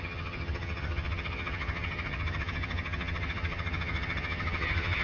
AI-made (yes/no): yes